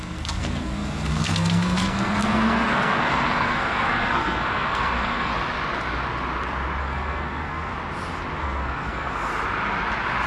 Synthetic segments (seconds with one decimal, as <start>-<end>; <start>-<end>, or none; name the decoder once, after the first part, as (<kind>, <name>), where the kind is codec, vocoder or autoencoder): 0.0-5.3 (codec, SNAC); 6.8-7.7; 8.4-9.3